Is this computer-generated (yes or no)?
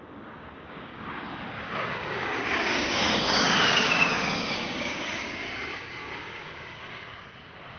yes